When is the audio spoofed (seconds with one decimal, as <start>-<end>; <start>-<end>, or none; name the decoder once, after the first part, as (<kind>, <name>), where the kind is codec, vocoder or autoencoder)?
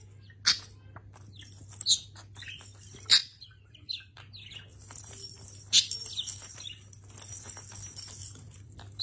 3.2-4.2 (vocoder, BigVGAN v2); 4.7-6.5; 8.2-9.0